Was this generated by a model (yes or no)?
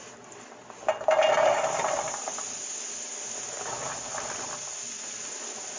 yes